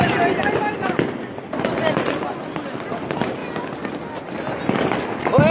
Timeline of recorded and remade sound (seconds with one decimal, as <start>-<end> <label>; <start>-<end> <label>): 0.0-5.5 recorded